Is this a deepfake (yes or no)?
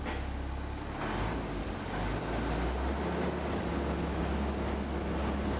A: no